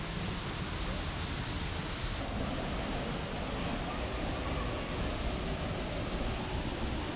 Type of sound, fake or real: real